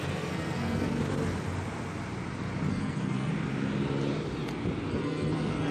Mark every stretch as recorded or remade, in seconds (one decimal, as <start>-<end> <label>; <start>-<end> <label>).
0.0-1.0 remade; 1.0-2.7 recorded; 2.7-3.3 remade; 3.3-4.9 recorded; 4.9-5.7 remade